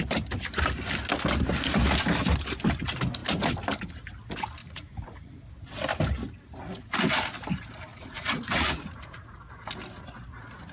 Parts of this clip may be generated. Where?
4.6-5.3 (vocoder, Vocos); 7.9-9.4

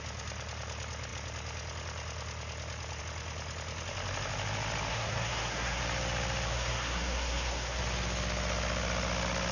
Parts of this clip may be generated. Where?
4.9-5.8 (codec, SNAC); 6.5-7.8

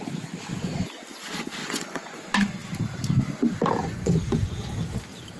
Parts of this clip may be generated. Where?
1.6-2.2 (vocoder, Vocos); 3.8-4.7

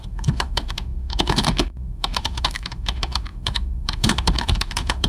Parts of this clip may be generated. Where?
0.0-5.1 (autoencoder, DAC-VAE)

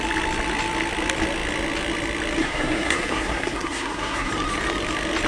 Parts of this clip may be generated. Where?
2.4-4.3 (codec, SNAC)